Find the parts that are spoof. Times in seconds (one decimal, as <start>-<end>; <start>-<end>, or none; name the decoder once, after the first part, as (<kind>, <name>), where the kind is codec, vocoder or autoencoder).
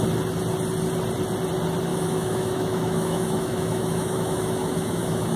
1.9-5.4 (autoencoder, DAC-VAE)